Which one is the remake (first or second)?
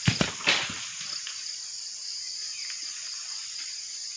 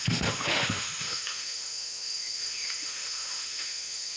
second